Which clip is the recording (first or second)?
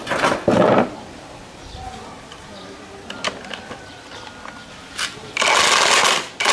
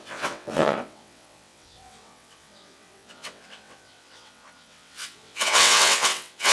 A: first